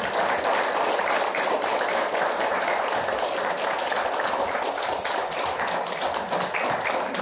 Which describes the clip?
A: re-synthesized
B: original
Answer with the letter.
B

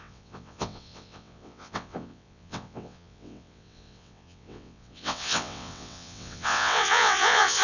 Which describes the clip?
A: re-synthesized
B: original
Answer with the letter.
A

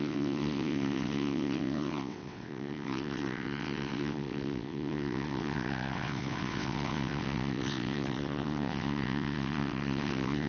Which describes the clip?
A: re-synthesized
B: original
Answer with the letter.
A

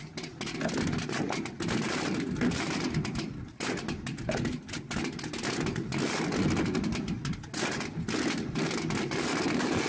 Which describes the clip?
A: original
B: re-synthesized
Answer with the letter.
A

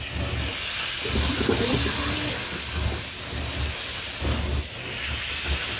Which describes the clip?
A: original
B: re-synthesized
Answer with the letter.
A